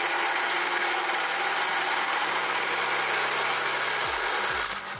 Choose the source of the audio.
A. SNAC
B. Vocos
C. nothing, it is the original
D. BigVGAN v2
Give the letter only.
C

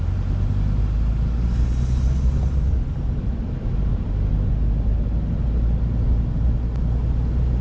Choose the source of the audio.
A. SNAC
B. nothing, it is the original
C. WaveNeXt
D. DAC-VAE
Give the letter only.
B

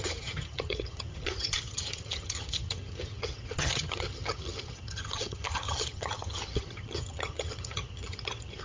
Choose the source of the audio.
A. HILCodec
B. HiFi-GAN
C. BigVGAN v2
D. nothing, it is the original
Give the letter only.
B